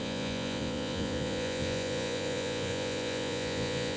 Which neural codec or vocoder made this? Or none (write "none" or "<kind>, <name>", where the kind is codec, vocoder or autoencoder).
vocoder, Vocos